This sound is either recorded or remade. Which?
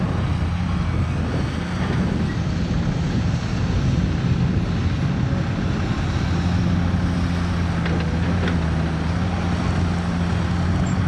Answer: recorded